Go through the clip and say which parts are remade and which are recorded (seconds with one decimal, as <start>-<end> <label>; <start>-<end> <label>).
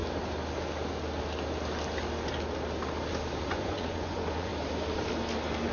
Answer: 0.0-3.4 recorded; 3.4-4.5 remade; 4.5-5.7 recorded